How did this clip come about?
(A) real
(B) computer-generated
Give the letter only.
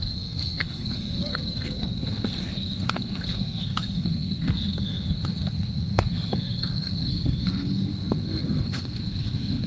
B